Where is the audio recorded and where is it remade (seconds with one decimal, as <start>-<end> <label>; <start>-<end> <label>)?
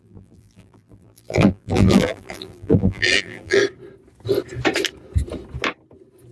0.0-3.6 remade; 3.6-6.3 recorded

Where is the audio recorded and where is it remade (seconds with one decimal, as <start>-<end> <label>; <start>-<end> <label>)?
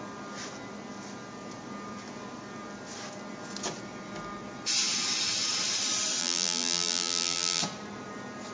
0.0-6.2 recorded; 6.2-7.6 remade; 7.6-8.5 recorded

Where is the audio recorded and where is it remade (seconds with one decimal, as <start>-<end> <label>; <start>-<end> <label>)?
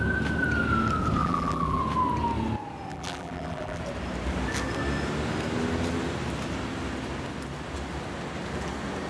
0.0-1.2 recorded; 1.2-1.8 remade; 1.8-2.9 recorded; 2.9-3.8 remade; 3.8-9.1 recorded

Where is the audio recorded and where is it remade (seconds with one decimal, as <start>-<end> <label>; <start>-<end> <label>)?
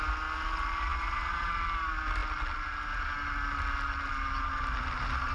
0.0-5.3 recorded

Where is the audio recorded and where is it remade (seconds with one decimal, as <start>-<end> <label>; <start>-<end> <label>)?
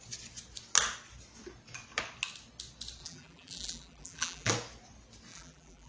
0.0-3.0 recorded; 3.0-4.5 remade; 4.5-5.3 recorded; 5.3-5.9 remade